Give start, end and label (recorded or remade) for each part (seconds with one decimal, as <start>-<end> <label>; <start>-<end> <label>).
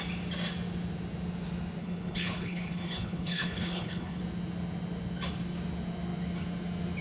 0.0-1.8 recorded; 1.8-4.2 remade; 4.2-7.0 recorded